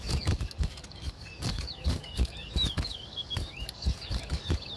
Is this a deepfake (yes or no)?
yes